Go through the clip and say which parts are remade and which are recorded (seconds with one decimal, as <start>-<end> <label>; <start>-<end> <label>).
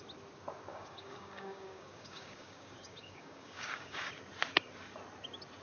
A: 0.0-0.7 recorded; 0.7-4.1 remade; 4.1-5.6 recorded